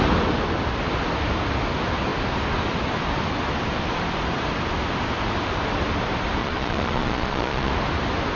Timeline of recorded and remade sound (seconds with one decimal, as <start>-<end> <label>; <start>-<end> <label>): 0.0-6.4 recorded; 6.4-7.7 remade; 7.7-8.4 recorded